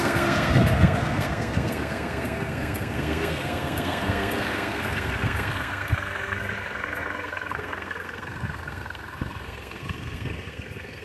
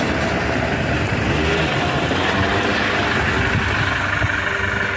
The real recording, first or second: second